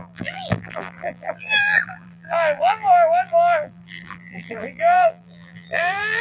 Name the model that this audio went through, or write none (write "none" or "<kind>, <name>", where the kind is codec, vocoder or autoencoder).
vocoder, BigVGAN v2